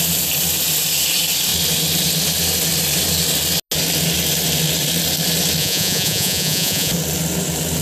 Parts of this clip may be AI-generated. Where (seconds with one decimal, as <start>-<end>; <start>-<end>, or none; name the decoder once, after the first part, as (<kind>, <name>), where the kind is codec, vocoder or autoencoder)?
5.6-6.9 (vocoder, Vocos)